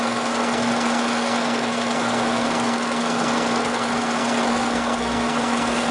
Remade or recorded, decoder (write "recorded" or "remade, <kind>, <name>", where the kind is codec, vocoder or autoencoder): remade, codec, SNAC